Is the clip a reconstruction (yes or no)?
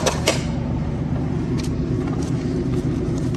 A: yes